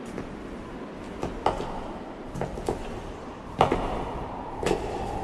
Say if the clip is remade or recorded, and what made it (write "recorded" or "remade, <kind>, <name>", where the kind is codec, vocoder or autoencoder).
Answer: remade, vocoder, BigVGAN v2